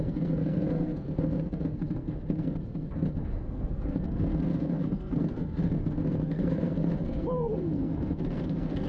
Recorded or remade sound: remade